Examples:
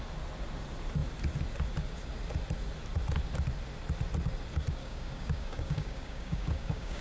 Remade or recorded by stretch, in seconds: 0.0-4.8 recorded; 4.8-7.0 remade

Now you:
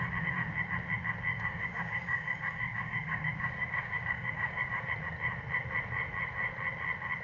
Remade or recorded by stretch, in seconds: 0.0-1.3 recorded; 1.3-4.7 remade; 4.7-7.2 recorded

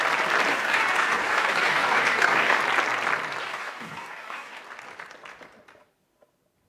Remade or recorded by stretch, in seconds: 0.0-0.5 recorded; 0.5-2.6 remade; 2.6-3.4 recorded; 3.4-4.6 remade; 4.6-6.7 recorded

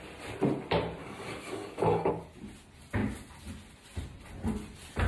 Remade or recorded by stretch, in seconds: 0.0-1.0 recorded; 1.0-2.1 remade; 2.1-5.1 recorded

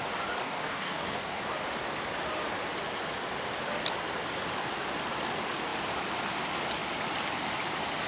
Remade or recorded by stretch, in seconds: 0.0-0.4 recorded; 0.4-1.4 remade; 1.4-8.1 recorded

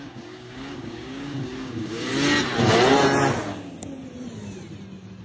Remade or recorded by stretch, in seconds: 0.0-2.1 remade; 2.1-3.5 recorded; 3.5-3.9 remade; 3.9-5.2 recorded